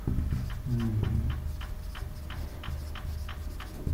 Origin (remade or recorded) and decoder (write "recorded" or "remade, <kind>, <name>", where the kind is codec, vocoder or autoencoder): recorded